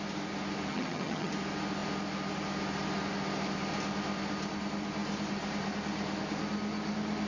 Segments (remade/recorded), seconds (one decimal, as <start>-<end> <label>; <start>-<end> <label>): 0.0-0.7 recorded; 0.7-1.3 remade; 1.3-7.3 recorded